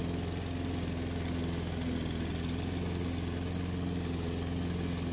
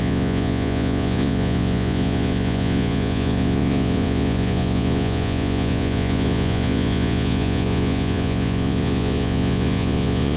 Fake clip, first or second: second